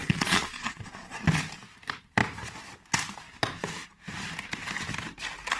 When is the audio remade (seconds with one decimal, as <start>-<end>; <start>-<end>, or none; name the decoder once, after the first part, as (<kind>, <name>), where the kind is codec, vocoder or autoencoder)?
0.0-1.2 (vocoder, Vocos)